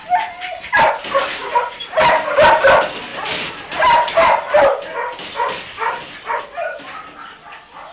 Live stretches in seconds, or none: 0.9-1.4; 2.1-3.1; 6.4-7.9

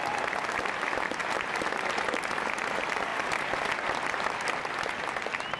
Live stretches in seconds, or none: 0.0-5.6

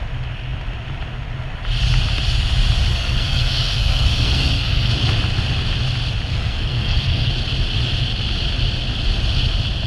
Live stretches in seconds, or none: 0.0-2.9; 4.9-6.3; 7.3-9.9

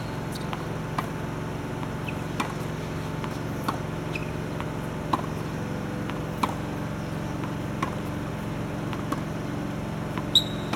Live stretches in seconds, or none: 0.0-10.8

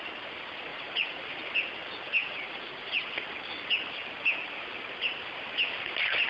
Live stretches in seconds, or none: 0.0-0.7; 1.2-2.2; 3.1-6.3